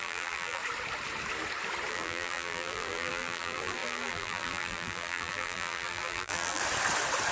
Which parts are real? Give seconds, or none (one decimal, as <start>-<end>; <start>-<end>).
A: 0.6-1.9; 6.6-7.3